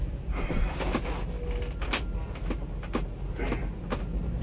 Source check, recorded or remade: recorded